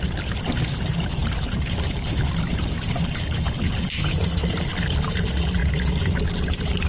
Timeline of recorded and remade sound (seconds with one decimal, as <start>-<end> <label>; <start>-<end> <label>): 0.0-5.6 remade; 5.6-6.2 recorded; 6.2-6.9 remade